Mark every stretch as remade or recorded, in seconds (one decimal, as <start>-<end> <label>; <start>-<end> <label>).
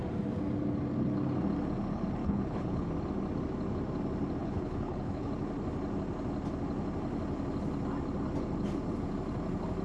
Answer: 0.0-2.2 recorded; 2.2-2.9 remade; 2.9-4.4 recorded; 4.4-5.3 remade; 5.3-9.8 recorded